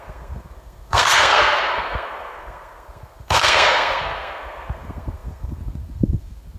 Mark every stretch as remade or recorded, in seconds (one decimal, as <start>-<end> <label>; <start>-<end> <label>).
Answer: 0.0-6.6 remade